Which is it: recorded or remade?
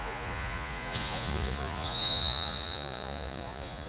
remade